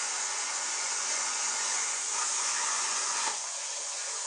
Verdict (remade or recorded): remade